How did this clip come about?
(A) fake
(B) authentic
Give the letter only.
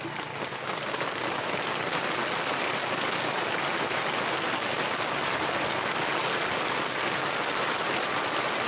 B